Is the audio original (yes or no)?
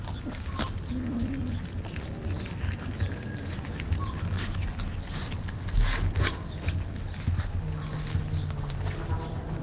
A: yes